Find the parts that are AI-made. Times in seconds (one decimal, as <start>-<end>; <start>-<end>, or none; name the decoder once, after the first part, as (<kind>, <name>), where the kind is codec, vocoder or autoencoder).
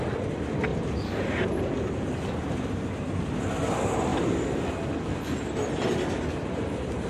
none